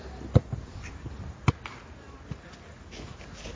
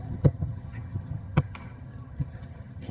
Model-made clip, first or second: second